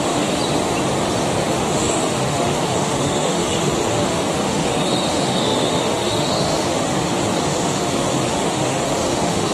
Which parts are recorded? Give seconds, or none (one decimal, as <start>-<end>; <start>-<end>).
0.4-1.5